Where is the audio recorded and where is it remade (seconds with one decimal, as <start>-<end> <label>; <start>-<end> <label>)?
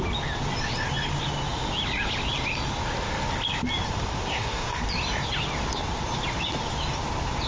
0.0-4.2 recorded; 4.2-4.8 remade; 4.8-7.5 recorded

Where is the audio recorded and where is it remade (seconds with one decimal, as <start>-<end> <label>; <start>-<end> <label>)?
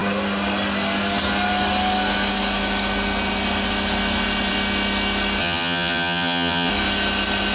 0.0-5.4 recorded; 5.4-6.7 remade; 6.7-7.5 recorded